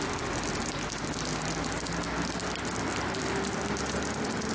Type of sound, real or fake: real